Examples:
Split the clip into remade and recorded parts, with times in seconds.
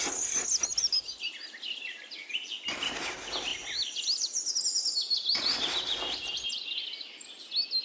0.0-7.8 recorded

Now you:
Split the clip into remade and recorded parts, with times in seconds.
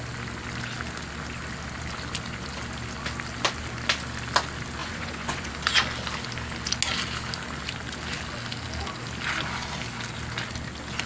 0.0-4.8 recorded; 4.8-5.5 remade; 5.5-11.1 recorded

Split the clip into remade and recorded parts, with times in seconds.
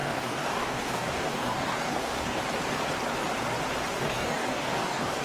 0.0-2.4 remade; 2.4-3.9 recorded; 3.9-5.2 remade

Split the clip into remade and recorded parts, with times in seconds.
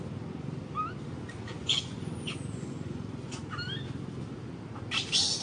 0.0-1.6 recorded; 1.6-3.4 remade; 3.4-5.4 recorded